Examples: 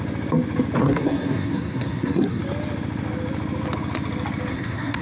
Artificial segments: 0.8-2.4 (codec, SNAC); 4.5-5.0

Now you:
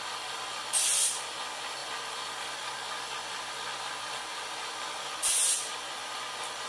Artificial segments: none

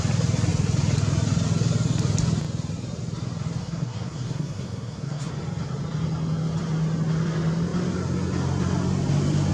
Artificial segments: 3.6-5.3 (codec, SNAC)

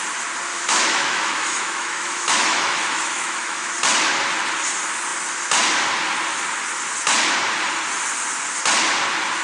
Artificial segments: 0.5-3.7 (autoencoder, DAC-VAE)

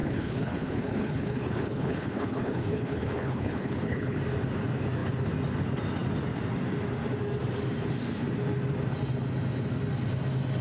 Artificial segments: 0.0-4.2 (codec, HILCodec)